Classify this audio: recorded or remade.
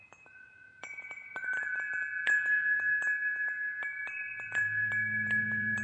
remade